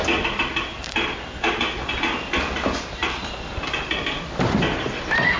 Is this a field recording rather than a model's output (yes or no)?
no